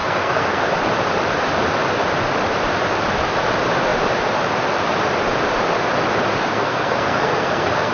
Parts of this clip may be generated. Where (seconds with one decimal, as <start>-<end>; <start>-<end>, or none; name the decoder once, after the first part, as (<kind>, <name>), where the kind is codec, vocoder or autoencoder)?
0.0-0.7 (codec, SNAC); 6.5-7.9